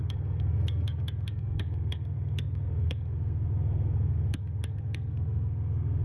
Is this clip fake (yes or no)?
yes